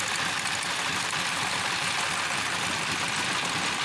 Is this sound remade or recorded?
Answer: recorded